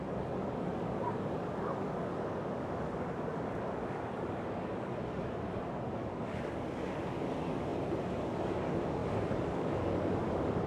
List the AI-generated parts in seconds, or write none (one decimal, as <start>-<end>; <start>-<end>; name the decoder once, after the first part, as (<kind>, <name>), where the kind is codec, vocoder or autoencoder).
0.0-10.7 (codec, DAC)